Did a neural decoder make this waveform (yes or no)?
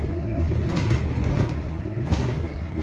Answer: yes